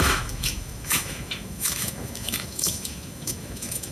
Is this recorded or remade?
remade